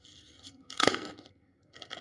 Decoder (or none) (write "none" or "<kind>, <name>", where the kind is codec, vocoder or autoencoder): codec, SNAC